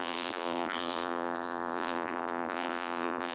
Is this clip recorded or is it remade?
remade